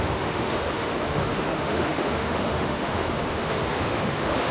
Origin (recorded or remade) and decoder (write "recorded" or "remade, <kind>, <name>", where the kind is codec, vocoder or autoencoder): remade, autoencoder, DAC-VAE